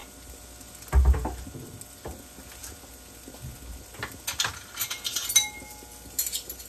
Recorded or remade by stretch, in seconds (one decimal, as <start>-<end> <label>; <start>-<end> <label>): 0.0-6.7 recorded